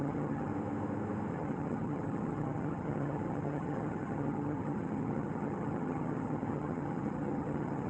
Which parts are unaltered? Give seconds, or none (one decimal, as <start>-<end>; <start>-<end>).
0.5-1.3